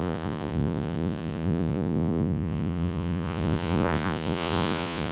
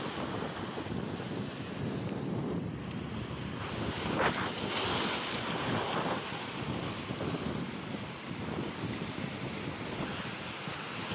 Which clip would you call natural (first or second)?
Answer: second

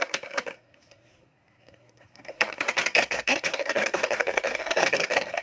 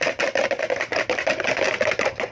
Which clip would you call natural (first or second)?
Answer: second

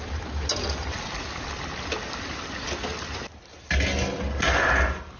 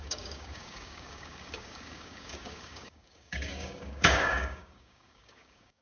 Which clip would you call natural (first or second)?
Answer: first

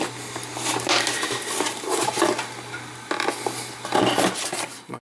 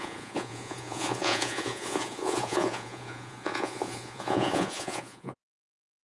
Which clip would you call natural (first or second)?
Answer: first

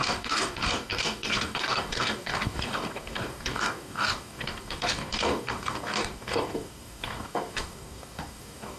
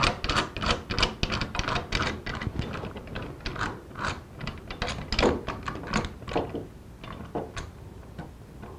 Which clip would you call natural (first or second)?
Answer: second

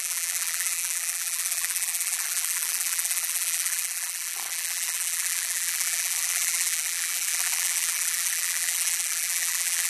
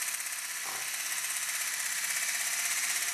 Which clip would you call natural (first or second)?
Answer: second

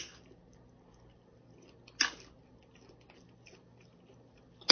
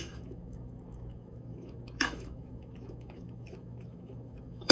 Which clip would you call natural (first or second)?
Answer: first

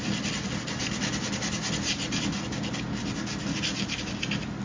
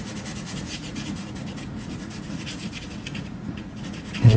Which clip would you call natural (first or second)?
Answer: first